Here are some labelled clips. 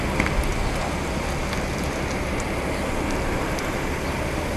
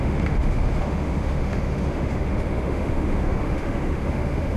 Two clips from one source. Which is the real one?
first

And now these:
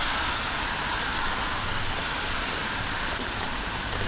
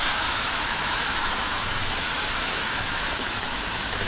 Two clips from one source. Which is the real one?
first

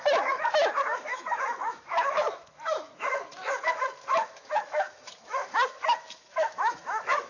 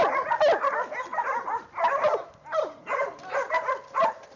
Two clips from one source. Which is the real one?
second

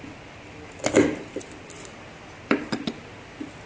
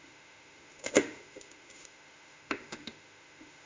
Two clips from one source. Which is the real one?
first